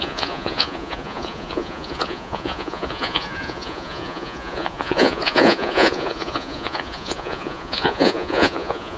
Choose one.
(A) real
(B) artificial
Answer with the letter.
B